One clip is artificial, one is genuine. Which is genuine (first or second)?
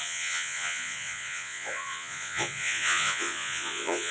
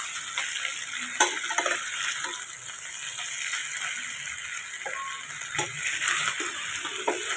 second